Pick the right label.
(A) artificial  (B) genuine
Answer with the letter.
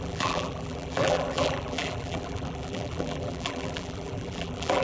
A